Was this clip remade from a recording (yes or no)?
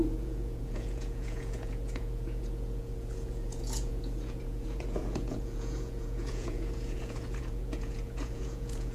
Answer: yes